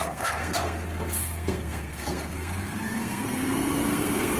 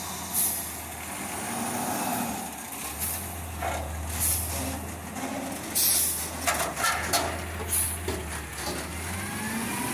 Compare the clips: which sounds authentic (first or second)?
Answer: second